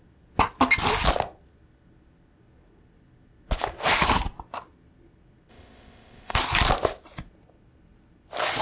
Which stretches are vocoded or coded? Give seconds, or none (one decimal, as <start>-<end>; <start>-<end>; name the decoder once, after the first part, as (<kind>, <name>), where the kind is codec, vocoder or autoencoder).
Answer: 5.5-6.4 (codec, ZipCodec)